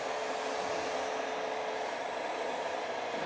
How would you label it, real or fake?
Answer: real